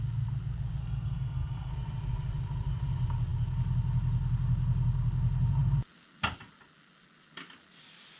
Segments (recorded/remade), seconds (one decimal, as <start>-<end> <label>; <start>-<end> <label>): 0.0-0.8 recorded; 0.8-1.7 remade; 1.7-8.2 recorded